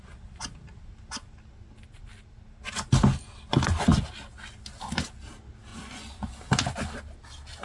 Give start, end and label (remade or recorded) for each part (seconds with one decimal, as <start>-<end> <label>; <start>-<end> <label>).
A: 0.0-5.7 recorded; 5.7-6.4 remade; 6.4-7.6 recorded